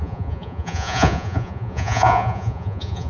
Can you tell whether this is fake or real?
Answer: fake